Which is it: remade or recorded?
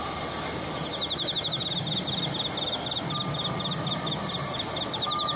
recorded